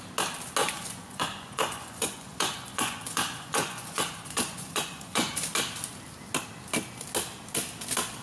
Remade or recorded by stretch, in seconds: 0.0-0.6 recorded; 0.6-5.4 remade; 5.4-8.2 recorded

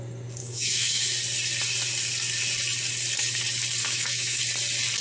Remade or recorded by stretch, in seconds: 0.0-0.4 recorded; 0.4-1.0 remade; 1.0-3.8 recorded; 3.8-4.4 remade; 4.4-5.0 recorded

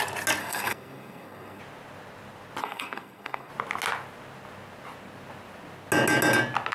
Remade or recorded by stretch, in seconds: 0.0-0.4 recorded; 0.4-1.6 remade; 1.6-2.6 recorded; 2.6-3.5 remade; 3.5-6.7 recorded

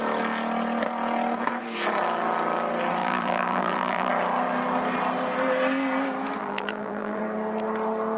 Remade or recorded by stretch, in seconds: 0.0-3.0 recorded; 3.0-4.1 remade; 4.1-6.4 recorded; 6.4-7.2 remade; 7.2-8.2 recorded

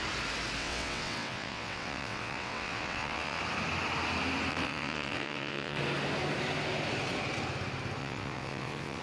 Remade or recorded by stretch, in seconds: 0.0-0.6 recorded; 0.6-3.4 remade; 3.4-4.5 recorded; 4.5-5.8 remade; 5.8-8.0 recorded; 8.0-9.0 remade

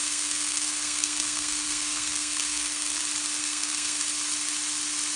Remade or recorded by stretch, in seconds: 0.0-3.0 remade; 3.0-3.4 recorded; 3.4-4.0 remade; 4.0-5.2 recorded

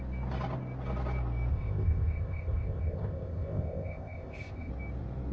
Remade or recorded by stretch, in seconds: 0.0-1.5 recorded; 1.5-4.7 remade; 4.7-5.3 recorded